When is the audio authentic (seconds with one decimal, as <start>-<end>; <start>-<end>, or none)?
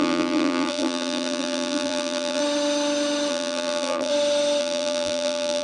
2.4-3.3; 4.1-4.6